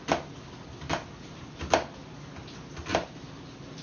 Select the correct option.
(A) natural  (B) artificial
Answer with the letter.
A